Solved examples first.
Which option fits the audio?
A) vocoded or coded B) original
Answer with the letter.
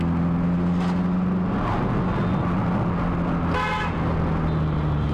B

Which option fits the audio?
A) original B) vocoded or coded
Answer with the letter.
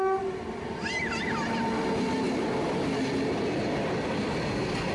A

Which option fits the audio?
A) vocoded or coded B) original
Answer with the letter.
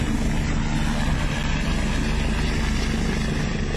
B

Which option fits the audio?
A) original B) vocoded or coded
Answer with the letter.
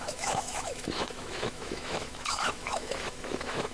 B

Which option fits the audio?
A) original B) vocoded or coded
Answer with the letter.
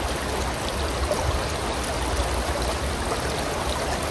A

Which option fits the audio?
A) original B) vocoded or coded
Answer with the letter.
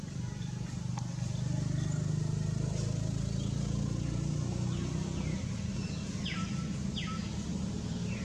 A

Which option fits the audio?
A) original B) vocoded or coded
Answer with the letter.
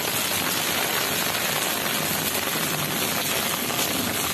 A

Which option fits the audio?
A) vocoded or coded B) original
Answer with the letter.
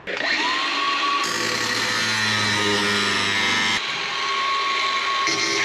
B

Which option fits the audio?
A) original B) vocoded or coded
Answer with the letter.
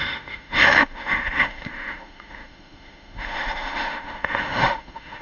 B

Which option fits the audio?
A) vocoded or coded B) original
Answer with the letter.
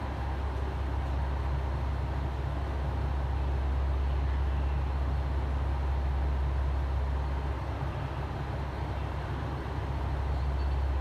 B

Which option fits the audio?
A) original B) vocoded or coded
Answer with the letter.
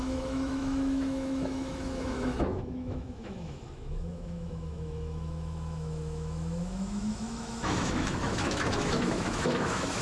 B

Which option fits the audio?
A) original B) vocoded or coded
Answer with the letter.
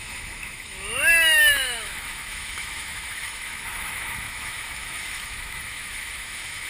B